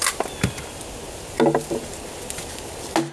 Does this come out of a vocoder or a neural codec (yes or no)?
no